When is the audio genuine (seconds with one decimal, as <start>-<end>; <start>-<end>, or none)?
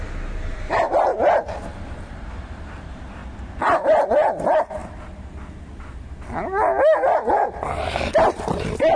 1.1-1.9; 3.2-4.1; 4.8-9.0